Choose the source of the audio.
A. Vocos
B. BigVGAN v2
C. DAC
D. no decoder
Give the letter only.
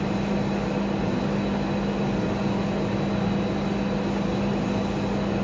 D